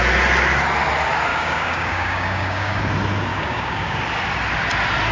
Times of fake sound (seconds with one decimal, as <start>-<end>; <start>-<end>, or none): 1.3-2.8; 3.3-4.0